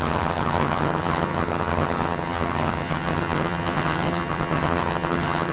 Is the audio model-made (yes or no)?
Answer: yes